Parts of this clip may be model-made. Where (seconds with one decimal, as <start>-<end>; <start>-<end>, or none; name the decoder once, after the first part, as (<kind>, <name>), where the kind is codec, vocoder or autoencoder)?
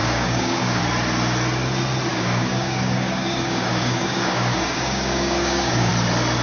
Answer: 0.0-0.8 (codec, DAC); 2.1-5.9